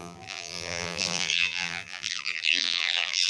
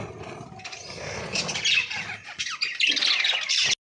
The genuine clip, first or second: second